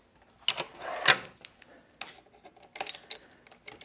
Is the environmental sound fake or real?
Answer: real